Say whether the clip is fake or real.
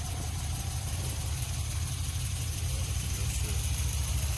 fake